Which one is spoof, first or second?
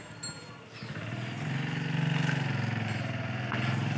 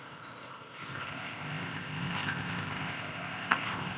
second